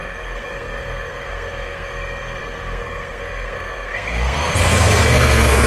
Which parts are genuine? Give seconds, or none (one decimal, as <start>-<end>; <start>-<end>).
none